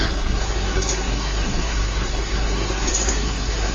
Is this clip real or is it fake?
fake